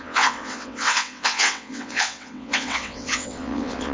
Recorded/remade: remade